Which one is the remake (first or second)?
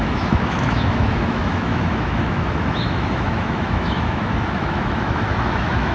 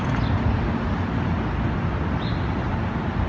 first